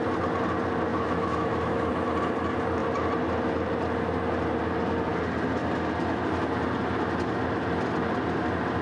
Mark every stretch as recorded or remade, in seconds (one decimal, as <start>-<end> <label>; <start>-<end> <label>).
0.0-0.9 recorded; 0.9-1.9 remade; 1.9-8.8 recorded